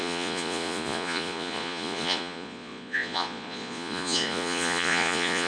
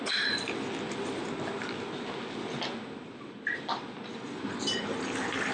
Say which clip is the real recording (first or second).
second